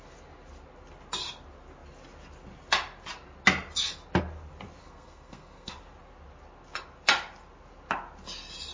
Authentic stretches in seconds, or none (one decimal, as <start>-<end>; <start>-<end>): 0.0-4.8; 5.7-8.7